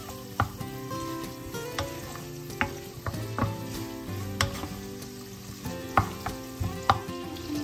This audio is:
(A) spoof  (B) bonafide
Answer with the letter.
B